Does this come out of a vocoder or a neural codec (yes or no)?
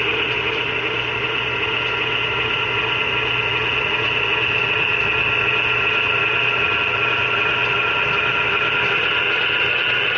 no